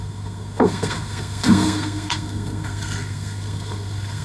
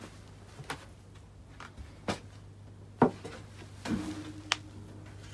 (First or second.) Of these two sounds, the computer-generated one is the first